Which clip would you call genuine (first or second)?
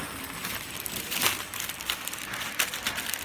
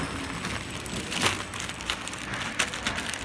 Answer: second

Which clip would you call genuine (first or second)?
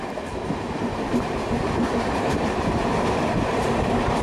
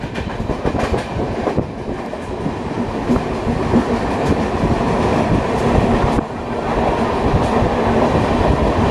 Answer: second